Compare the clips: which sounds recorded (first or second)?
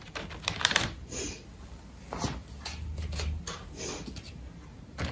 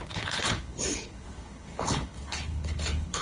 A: first